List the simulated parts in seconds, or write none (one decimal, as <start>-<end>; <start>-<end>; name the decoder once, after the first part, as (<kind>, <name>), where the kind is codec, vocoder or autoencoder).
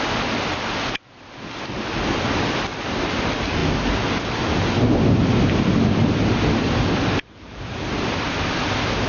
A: none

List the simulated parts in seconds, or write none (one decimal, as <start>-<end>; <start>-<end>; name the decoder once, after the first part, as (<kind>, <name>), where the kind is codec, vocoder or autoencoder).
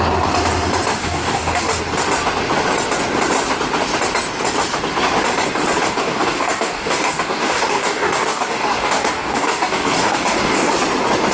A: 1.0-1.8 (codec, DAC); 5.8-10.7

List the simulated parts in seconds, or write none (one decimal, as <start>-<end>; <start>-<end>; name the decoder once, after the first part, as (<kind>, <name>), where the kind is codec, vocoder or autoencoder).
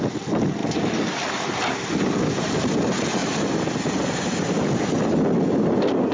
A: none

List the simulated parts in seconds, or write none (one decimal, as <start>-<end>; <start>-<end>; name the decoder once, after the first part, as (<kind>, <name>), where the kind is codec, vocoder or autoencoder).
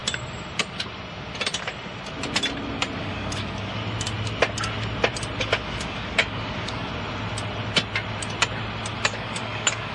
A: 3.0-3.8 (codec, DAC); 5.4-6.9; 9.0-9.9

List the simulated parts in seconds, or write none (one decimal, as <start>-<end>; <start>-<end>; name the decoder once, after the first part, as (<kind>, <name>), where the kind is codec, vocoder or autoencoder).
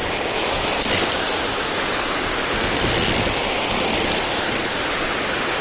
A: none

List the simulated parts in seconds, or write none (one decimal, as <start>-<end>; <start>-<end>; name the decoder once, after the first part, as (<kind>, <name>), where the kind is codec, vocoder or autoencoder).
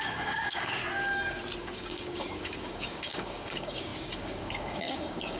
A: 0.0-0.8 (codec, DAC); 1.6-5.4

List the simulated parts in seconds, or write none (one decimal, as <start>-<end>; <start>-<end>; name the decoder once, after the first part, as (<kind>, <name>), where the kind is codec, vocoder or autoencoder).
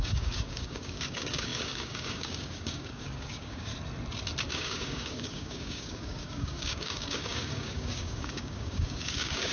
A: 0.0-3.7 (codec, DAC); 4.5-9.5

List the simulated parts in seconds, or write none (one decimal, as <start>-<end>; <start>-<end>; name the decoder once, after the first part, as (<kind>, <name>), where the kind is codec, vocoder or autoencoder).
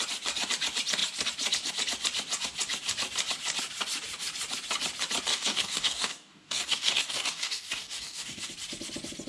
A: 5.3-8.5 (codec, DAC)